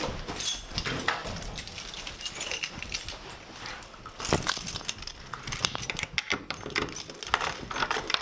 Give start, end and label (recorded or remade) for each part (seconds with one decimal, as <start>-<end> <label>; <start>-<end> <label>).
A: 0.0-1.2 recorded; 1.2-4.3 remade; 4.3-5.6 recorded; 5.6-6.6 remade; 6.6-8.2 recorded